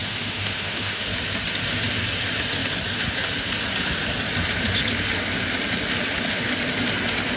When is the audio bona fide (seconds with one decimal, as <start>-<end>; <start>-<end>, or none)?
1.0-7.4